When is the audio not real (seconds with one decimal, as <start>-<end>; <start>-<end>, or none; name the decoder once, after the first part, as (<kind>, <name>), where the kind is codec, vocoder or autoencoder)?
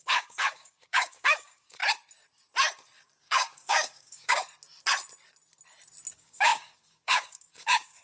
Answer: 0.0-1.8 (codec, DAC); 3.2-4.4; 6.1-8.0